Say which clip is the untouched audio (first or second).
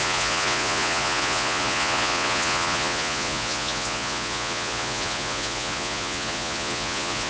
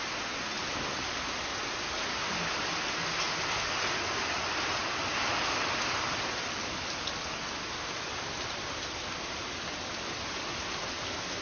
second